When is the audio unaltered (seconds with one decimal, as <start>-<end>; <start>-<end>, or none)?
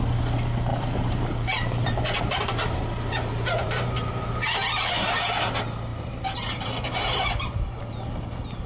0.0-0.7; 4.9-5.9; 7.8-8.7